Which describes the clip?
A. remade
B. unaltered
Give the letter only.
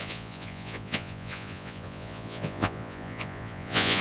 A